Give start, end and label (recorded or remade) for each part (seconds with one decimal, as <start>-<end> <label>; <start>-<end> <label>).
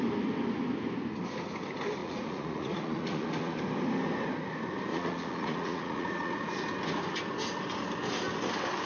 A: 0.0-2.0 recorded; 2.0-3.6 remade; 3.6-4.9 recorded; 4.9-6.3 remade; 6.3-8.9 recorded